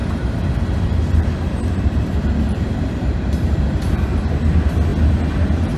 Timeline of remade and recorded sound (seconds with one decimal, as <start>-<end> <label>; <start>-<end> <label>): 0.0-4.9 remade; 4.9-5.8 recorded